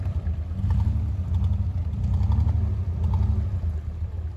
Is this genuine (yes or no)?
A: yes